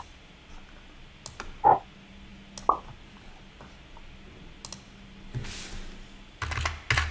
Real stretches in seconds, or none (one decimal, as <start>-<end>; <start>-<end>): 0.0-7.1